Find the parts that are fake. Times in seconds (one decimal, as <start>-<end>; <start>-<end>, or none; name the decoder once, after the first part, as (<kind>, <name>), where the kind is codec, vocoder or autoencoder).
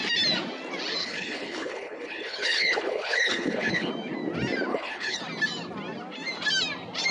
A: 1.0-3.9 (codec, HILCodec); 4.7-5.2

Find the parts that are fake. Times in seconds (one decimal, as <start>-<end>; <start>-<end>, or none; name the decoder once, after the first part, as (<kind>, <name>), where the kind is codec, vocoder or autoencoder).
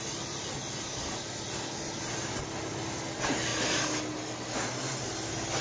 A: none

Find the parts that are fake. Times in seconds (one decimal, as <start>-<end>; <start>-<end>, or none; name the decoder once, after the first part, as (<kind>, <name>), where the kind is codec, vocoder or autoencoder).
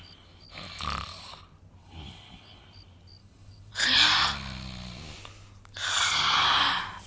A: 1.8-2.6 (codec, HILCodec); 3.2-3.7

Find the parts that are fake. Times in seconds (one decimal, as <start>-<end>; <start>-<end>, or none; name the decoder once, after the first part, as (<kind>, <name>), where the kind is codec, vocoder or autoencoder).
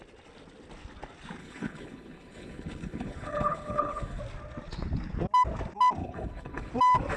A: 1.4-4.2 (codec, HILCodec); 6.0-6.7